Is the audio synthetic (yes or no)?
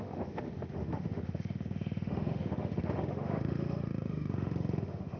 yes